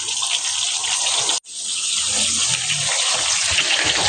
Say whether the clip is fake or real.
real